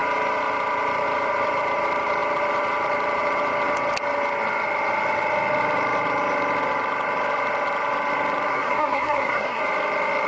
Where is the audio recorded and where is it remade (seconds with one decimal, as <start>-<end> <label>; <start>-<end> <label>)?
0.0-8.5 recorded; 8.5-9.6 remade; 9.6-10.3 recorded